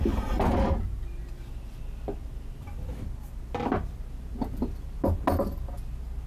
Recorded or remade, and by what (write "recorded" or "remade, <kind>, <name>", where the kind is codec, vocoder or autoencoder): recorded